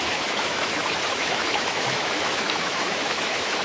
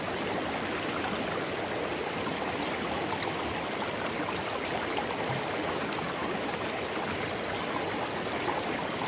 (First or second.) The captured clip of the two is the second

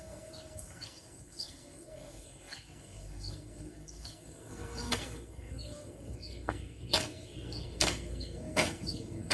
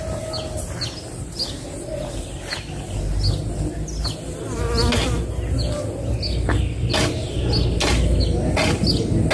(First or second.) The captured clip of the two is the second